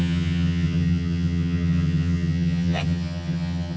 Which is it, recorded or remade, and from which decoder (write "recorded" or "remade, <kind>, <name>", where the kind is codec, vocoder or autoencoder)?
remade, vocoder, HiFi-GAN